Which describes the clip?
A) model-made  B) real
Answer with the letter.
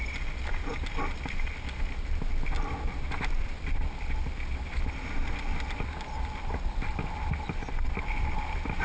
B